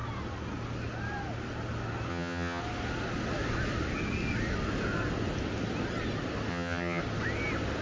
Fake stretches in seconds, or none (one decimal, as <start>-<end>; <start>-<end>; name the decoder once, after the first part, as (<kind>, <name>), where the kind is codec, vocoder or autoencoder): 2.1-2.6 (vocoder, HiFi-GAN); 6.5-7.0